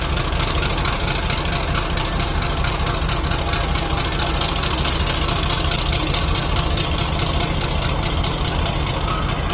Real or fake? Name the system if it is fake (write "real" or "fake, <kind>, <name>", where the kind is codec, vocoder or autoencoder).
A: real